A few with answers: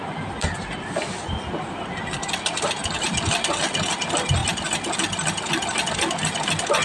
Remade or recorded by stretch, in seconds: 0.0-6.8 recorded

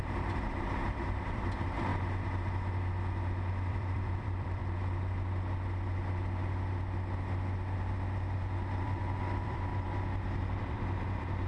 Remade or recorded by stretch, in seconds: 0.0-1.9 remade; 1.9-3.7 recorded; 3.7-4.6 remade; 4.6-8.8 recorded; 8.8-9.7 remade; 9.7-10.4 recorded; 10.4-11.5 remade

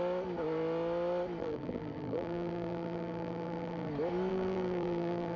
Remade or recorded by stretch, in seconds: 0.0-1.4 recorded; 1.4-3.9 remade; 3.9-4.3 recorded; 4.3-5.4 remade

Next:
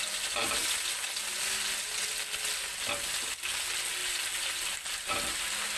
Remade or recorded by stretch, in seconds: 0.0-4.0 recorded; 4.0-5.1 remade; 5.1-5.8 recorded